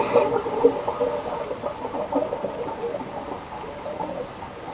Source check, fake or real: real